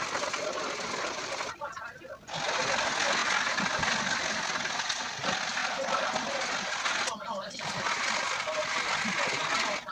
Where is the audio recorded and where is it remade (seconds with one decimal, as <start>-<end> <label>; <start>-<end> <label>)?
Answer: 0.0-2.0 remade; 2.0-9.9 recorded